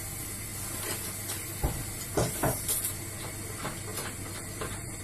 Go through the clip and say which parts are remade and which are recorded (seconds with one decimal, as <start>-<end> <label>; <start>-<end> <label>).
0.0-5.0 recorded